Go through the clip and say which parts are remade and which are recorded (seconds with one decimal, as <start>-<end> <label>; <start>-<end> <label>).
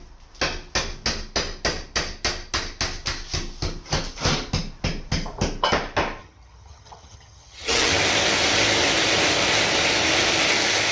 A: 0.0-6.2 recorded; 6.2-7.9 remade; 7.9-10.9 recorded